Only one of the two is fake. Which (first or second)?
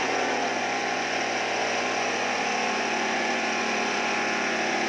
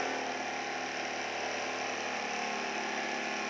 first